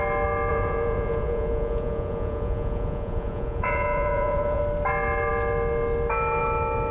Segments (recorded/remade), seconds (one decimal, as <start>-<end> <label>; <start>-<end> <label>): 0.0-0.5 recorded; 0.5-4.6 remade; 4.6-6.9 recorded